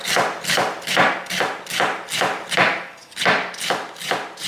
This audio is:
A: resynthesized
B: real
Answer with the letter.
B